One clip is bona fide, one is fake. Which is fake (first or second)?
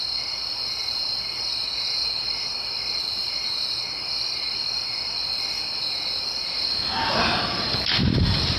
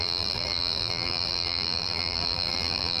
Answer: second